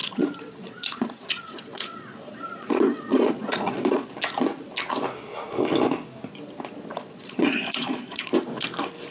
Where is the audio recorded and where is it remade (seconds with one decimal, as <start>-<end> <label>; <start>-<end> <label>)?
0.0-4.1 remade; 4.1-6.9 recorded; 6.9-8.3 remade; 8.3-9.1 recorded